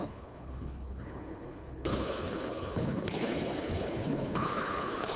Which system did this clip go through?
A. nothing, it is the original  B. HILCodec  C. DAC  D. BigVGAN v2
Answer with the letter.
B